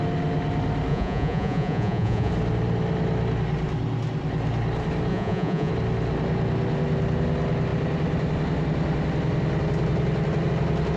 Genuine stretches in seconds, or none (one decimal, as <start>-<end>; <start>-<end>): 0.0-0.9; 2.3-5.1; 5.7-11.0